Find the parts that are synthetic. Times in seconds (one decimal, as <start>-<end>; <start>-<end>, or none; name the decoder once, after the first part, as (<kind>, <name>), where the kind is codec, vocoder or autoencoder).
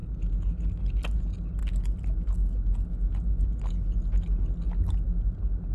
none